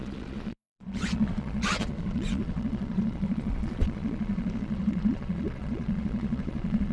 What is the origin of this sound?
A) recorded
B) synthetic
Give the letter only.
B